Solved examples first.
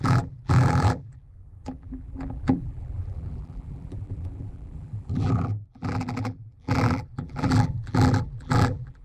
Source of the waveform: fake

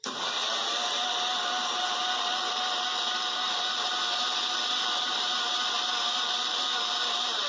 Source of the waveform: fake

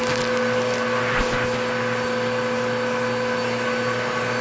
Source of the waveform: real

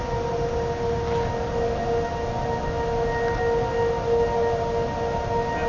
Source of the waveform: real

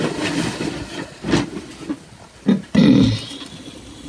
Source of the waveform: real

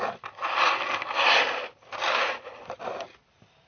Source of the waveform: real